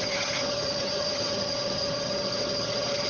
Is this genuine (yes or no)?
no